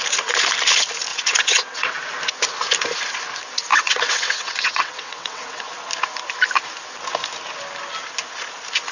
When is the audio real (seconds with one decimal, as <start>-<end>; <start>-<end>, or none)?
0.0-1.1; 2.0-3.7; 5.6-8.9